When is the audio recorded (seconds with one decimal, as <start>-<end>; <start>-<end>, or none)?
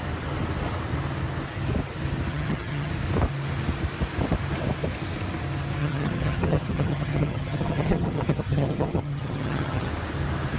0.0-2.3; 2.9-5.8; 9.9-10.6